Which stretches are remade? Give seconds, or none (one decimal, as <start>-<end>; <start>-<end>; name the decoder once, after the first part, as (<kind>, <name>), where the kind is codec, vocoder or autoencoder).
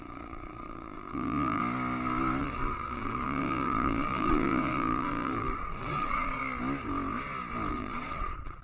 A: 0.0-1.6 (vocoder, Vocos); 2.4-6.4; 7.7-8.6